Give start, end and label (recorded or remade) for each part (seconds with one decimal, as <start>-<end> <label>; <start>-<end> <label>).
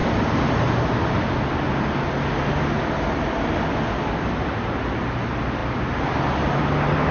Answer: 0.0-7.1 recorded